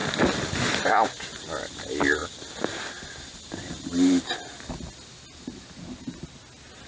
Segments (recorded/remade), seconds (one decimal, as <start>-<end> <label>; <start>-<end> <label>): 0.0-6.9 recorded